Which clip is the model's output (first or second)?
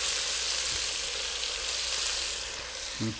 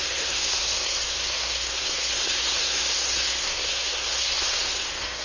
second